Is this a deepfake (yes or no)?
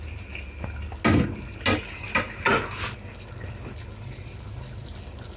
no